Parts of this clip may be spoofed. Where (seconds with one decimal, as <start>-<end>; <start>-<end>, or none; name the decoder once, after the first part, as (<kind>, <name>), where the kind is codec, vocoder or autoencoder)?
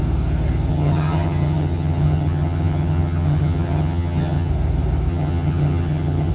0.7-4.5 (vocoder, HiFi-GAN); 5.1-6.3